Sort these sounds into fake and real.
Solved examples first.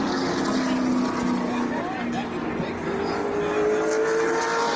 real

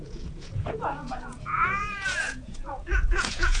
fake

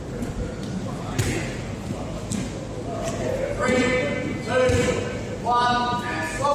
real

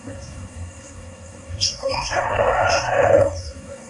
fake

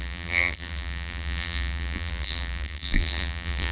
fake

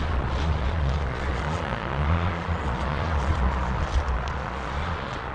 fake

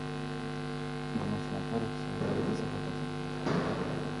real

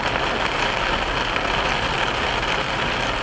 real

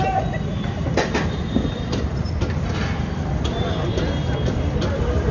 fake